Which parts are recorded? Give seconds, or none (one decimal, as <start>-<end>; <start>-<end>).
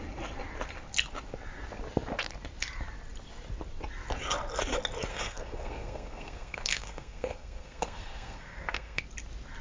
0.0-5.1; 9.0-9.6